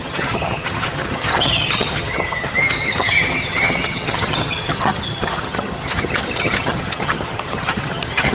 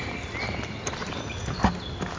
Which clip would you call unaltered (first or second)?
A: second